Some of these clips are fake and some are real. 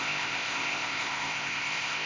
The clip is fake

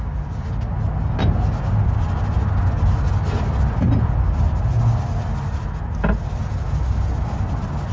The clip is real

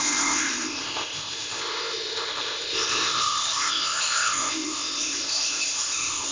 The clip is fake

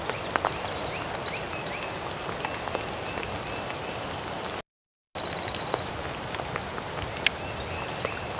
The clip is real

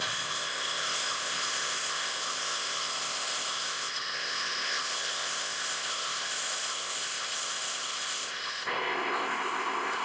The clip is fake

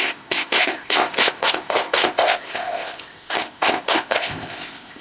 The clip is fake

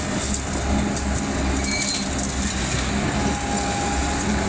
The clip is real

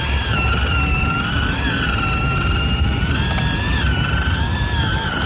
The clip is real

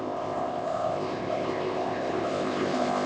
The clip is fake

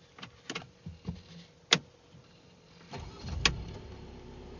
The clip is real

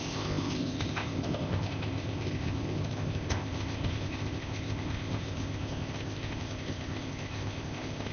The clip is fake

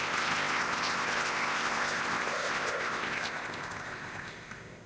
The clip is fake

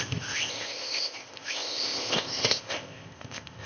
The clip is fake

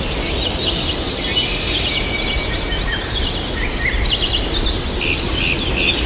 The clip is real